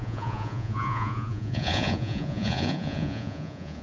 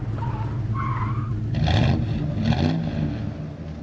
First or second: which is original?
second